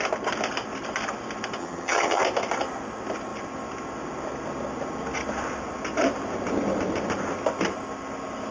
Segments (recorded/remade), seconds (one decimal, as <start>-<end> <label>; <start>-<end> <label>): 0.0-1.6 recorded; 1.6-2.2 remade; 2.2-8.5 recorded